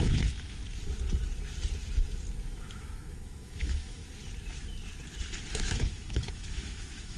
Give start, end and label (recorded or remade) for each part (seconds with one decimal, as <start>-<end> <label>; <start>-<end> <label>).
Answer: 0.0-0.6 remade; 0.6-2.6 recorded; 2.6-4.0 remade; 4.0-5.5 recorded; 5.5-7.2 remade